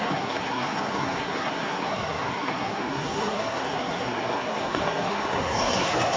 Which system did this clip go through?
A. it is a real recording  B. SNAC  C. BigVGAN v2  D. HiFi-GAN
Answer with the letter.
B